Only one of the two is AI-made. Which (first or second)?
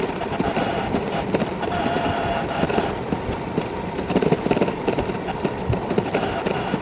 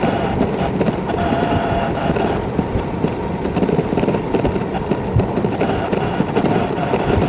first